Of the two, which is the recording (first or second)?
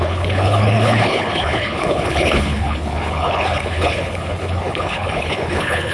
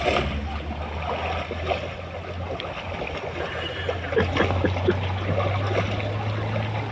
second